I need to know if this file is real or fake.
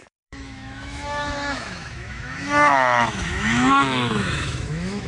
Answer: fake